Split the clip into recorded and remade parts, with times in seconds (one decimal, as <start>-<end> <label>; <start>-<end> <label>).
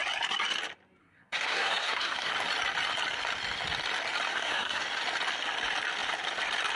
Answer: 0.0-1.0 recorded; 1.0-2.3 remade; 2.3-4.3 recorded; 4.3-4.8 remade; 4.8-6.8 recorded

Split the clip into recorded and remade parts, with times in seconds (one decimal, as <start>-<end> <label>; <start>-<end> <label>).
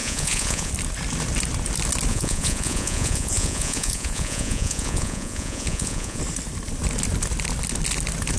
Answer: 0.0-0.7 remade; 0.7-2.1 recorded; 2.1-6.2 remade; 6.2-8.4 recorded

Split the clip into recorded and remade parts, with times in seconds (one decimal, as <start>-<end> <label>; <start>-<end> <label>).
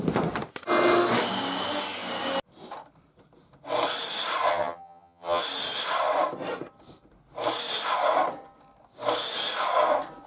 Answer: 0.0-4.5 recorded; 4.5-5.4 remade; 5.4-10.3 recorded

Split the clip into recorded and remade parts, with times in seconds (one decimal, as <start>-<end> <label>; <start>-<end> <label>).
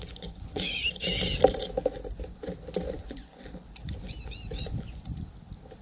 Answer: 0.0-0.8 remade; 0.8-2.9 recorded; 2.9-3.4 remade; 3.4-4.2 recorded; 4.2-5.1 remade; 5.1-5.8 recorded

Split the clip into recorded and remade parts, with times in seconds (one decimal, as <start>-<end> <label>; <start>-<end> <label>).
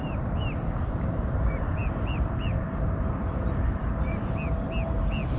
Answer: 0.0-5.4 recorded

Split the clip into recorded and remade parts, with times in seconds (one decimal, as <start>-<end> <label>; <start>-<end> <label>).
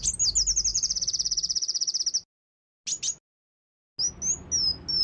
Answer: 0.0-0.7 recorded; 0.7-2.0 remade; 2.0-5.0 recorded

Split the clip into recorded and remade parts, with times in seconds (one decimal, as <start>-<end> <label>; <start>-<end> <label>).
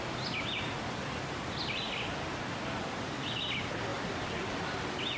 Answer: 0.0-5.2 recorded